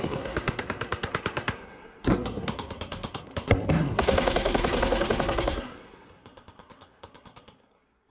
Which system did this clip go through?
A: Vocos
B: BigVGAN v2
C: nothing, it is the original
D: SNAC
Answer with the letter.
D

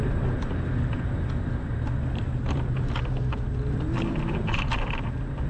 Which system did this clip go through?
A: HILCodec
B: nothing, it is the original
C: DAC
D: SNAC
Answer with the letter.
B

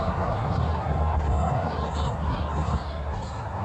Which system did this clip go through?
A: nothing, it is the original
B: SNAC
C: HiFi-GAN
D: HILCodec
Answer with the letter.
B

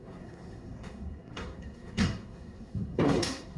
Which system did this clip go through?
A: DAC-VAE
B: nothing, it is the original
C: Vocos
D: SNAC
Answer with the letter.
D